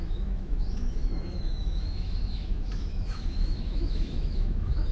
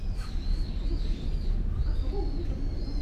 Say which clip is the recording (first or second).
second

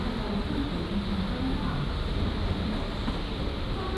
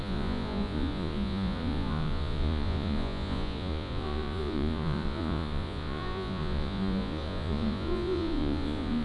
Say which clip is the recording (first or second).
first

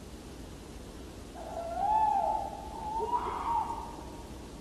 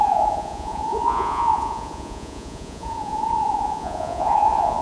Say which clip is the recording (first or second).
first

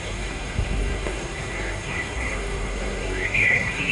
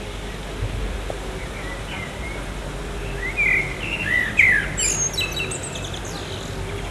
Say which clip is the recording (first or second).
second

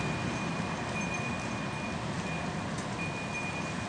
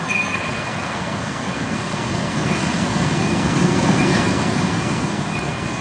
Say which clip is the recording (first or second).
first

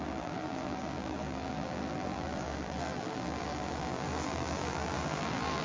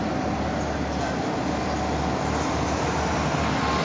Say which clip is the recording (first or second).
second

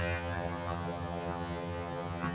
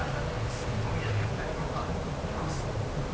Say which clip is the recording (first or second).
second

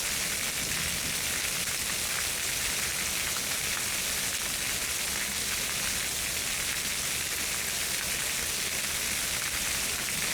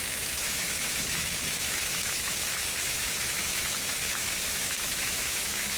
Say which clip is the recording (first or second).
first